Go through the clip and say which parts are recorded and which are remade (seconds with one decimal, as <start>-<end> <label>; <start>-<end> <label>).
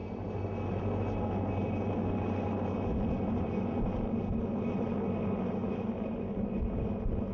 0.0-7.3 recorded